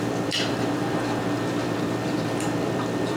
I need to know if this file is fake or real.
fake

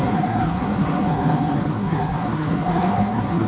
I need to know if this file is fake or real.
fake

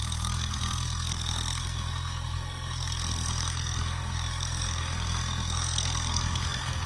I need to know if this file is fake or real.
fake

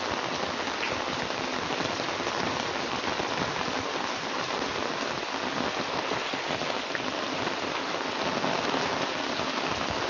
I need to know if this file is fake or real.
real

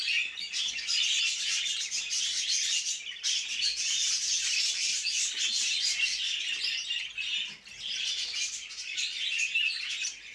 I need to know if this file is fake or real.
real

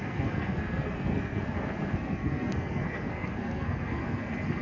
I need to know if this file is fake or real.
fake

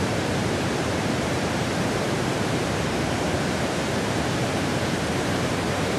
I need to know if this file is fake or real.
fake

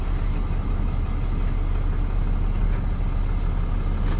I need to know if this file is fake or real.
real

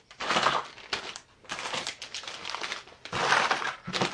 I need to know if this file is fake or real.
real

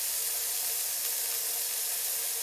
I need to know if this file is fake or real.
real